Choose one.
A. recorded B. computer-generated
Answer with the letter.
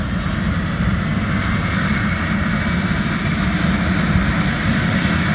A